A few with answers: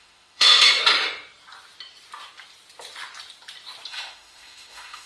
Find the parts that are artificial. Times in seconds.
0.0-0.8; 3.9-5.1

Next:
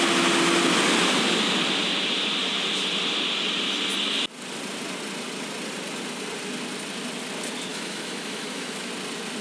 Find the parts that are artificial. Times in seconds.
7.7-8.9

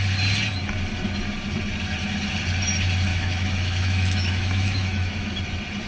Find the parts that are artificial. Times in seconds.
3.1-5.4

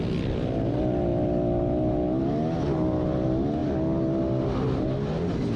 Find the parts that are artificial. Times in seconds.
none